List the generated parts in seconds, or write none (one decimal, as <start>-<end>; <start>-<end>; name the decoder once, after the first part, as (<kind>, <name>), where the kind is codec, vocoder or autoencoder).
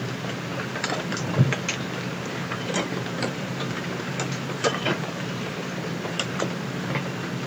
2.4-6.9 (vocoder, BigVGAN v2)